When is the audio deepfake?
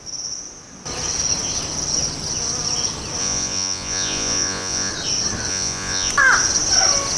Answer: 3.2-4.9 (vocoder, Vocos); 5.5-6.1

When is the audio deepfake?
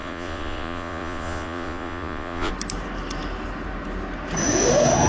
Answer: 0.0-2.5 (vocoder, Vocos)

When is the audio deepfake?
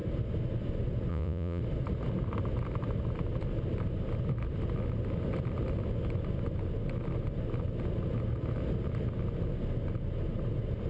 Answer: 1.1-1.6 (vocoder, Vocos)